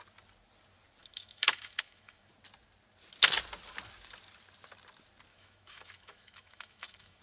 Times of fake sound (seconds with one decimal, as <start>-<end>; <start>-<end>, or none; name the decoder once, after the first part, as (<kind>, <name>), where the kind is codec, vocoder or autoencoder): 1.0-2.3 (autoencoder, DAC-VAE); 5.3-7.2